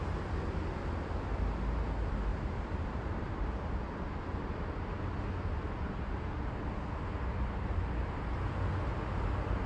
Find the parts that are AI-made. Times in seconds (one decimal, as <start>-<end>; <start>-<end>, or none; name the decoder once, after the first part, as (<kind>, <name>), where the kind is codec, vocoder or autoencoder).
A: 2.3-3.3 (vocoder, BigVGAN v2)

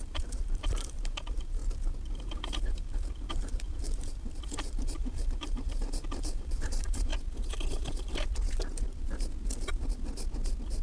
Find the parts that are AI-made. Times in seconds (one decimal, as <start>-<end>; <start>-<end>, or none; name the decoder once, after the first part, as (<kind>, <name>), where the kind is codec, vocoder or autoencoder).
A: 0.0-1.6 (vocoder, BigVGAN v2); 2.1-7.1

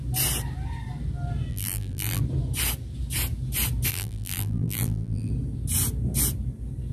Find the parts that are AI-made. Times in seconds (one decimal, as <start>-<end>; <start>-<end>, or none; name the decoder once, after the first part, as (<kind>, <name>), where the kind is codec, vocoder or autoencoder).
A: 1.5-2.2 (vocoder, BigVGAN v2); 3.9-5.3

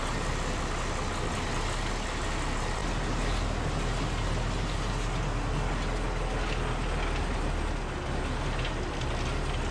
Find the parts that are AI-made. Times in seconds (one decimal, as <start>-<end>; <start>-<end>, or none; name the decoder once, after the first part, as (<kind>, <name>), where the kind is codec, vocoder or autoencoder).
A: none

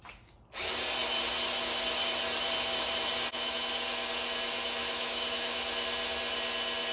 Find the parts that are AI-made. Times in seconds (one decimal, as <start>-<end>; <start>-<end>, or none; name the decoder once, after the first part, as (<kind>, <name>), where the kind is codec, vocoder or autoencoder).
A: 4.8-5.5 (autoencoder, DAC-VAE)

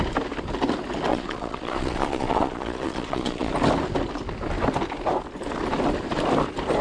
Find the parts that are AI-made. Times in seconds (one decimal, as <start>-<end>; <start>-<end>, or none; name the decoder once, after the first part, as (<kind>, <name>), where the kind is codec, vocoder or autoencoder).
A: 1.1-3.5 (vocoder, Vocos)